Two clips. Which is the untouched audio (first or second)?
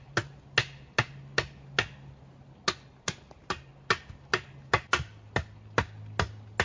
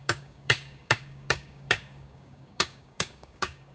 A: first